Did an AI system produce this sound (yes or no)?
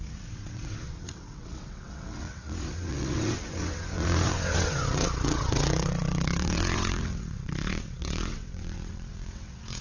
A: yes